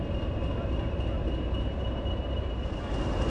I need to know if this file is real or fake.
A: real